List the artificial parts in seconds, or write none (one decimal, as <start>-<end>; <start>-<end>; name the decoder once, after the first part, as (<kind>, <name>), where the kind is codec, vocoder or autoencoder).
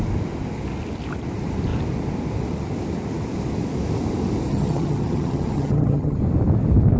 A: 4.5-6.2 (vocoder, HiFi-GAN)